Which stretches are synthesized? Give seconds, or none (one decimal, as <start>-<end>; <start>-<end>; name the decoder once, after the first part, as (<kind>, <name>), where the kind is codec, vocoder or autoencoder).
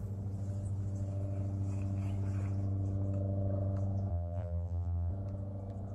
4.1-5.1 (vocoder, BigVGAN v2)